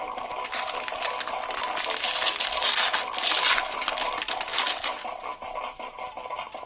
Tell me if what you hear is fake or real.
real